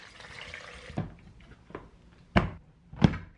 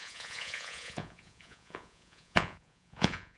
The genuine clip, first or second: first